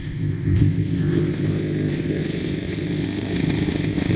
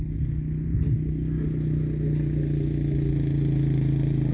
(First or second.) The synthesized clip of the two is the first